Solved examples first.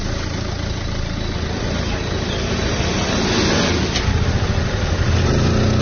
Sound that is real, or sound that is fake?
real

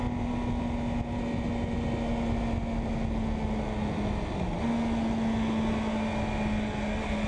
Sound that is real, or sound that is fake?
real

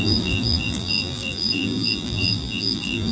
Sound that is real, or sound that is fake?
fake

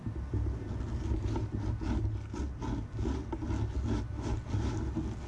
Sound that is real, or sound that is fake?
real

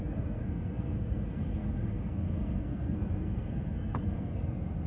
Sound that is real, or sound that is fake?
fake